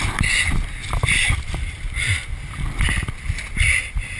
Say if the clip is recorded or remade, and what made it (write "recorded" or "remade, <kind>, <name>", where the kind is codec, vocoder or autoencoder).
recorded